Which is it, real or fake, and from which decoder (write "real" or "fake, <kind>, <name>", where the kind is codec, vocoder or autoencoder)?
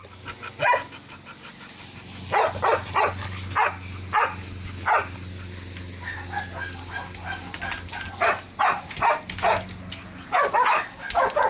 real